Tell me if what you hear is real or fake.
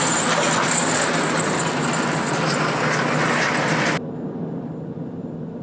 real